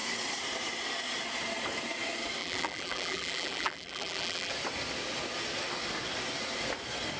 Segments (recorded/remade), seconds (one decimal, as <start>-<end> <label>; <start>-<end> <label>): 0.0-2.4 recorded; 2.4-4.5 remade; 4.5-7.2 recorded